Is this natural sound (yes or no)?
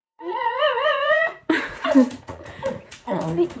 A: no